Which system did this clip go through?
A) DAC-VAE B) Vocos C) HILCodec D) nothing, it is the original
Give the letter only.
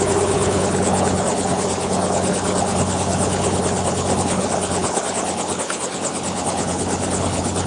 C